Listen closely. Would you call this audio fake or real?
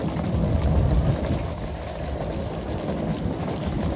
real